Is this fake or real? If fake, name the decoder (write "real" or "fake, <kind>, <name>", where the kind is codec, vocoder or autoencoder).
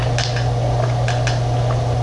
real